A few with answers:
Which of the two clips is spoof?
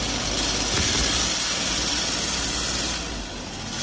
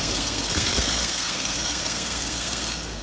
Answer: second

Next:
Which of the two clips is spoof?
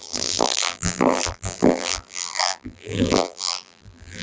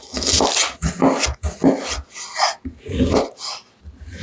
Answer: first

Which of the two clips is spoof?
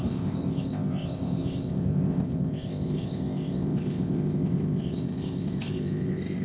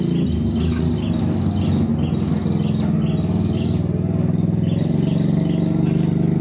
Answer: first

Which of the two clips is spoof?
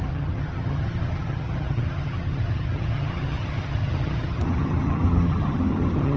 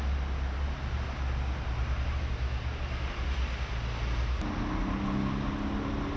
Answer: first